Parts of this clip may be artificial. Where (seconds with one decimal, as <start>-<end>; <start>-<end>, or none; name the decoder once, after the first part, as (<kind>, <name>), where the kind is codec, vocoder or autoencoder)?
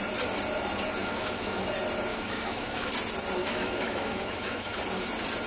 1.0-1.6 (autoencoder, DAC-VAE); 2.1-2.9; 3.4-4.8